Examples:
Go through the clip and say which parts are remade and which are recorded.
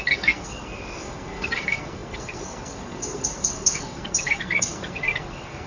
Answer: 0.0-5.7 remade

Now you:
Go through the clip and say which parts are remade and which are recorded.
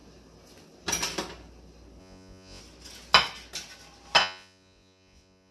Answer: 0.0-2.0 recorded; 2.0-2.6 remade; 2.6-4.2 recorded; 4.2-5.5 remade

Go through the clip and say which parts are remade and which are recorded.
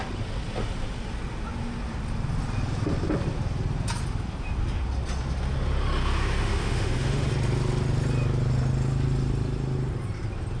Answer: 0.0-6.0 recorded; 6.0-7.3 remade; 7.3-10.6 recorded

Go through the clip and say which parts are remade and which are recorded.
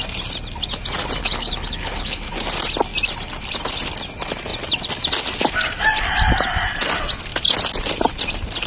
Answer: 0.0-1.2 recorded; 1.2-2.3 remade; 2.3-8.7 recorded